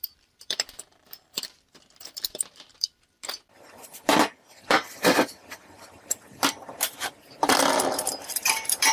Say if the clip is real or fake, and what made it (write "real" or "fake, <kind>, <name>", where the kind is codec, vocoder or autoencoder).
fake, vocoder, BigVGAN v2